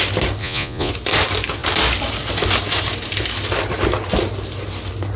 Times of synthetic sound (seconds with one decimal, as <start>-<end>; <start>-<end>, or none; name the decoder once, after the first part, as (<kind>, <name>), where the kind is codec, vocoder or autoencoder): 0.4-0.9 (vocoder, Vocos)